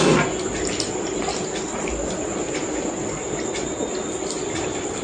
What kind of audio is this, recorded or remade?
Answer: recorded